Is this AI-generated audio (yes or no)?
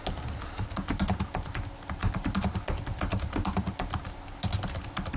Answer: no